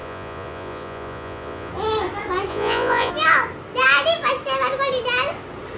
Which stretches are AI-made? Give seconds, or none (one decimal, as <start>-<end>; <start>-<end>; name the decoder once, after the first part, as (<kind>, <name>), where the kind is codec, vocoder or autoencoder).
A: 0.0-1.7 (vocoder, Vocos); 2.5-3.1